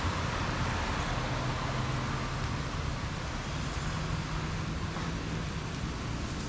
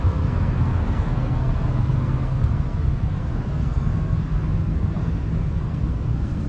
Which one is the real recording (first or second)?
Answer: first